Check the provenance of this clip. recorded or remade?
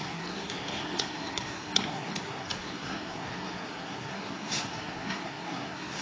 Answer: remade